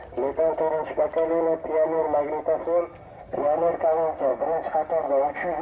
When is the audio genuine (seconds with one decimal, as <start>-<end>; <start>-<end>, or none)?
2.0-3.2; 4.3-5.0